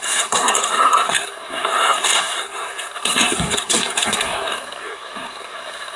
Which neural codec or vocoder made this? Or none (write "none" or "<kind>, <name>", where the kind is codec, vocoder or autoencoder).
codec, SNAC